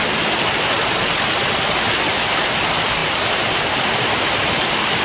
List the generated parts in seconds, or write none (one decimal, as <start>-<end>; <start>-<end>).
none